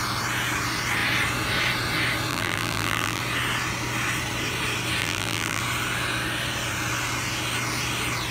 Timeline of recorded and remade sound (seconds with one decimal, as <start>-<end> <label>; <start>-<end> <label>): 0.0-2.3 recorded; 2.3-3.2 remade; 3.2-5.0 recorded; 5.0-5.6 remade; 5.6-8.3 recorded